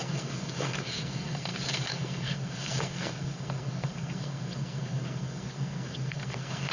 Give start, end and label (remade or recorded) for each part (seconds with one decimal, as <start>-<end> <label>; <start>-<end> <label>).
0.0-6.7 remade